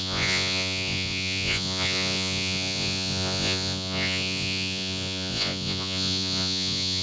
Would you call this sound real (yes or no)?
no